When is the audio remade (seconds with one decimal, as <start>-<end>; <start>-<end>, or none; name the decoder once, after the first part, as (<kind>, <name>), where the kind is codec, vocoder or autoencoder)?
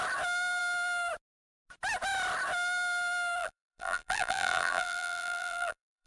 3.4-6.1 (vocoder, BigVGAN v2)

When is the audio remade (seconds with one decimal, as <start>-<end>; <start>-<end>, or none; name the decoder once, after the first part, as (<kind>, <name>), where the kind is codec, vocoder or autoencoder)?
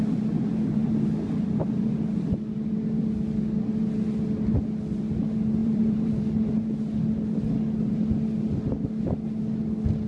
5.6-6.2 (vocoder, BigVGAN v2)